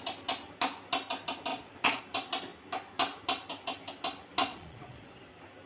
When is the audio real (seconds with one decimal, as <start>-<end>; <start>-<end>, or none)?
0.0-1.5; 2.0-4.4; 5.3-5.7